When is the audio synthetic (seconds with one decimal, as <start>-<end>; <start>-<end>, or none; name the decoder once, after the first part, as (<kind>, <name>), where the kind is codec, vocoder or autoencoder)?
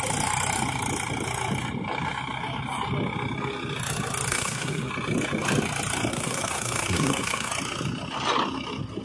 4.3-4.9 (codec, SNAC); 6.1-7.5